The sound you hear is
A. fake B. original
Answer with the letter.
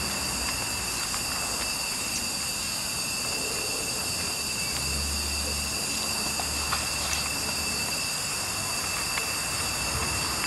B